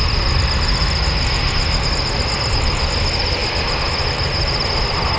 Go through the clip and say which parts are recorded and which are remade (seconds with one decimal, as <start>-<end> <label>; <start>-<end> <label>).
0.0-5.2 recorded